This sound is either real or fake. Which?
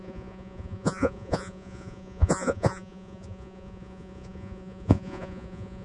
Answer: fake